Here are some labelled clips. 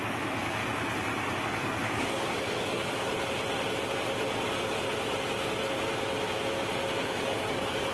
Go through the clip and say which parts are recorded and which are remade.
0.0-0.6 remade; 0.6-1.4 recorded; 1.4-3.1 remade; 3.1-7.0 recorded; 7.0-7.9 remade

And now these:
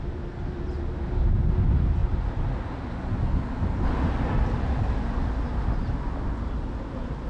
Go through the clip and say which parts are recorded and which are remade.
0.0-7.3 recorded

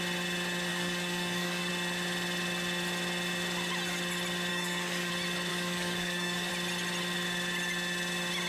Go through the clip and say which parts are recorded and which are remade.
0.0-0.7 recorded; 0.7-1.7 remade; 1.7-4.5 recorded; 4.5-5.1 remade; 5.1-5.5 recorded; 5.5-6.5 remade; 6.5-8.5 recorded

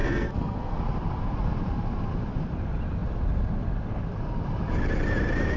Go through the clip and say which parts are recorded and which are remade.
0.0-0.8 remade; 0.8-5.6 recorded